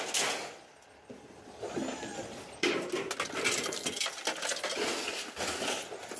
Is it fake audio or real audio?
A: real